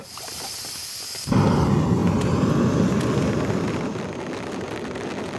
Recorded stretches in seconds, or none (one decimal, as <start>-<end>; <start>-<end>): 0.0-5.4